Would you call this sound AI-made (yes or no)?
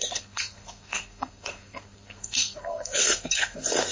yes